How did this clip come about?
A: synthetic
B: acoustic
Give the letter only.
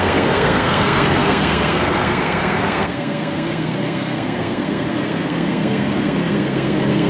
A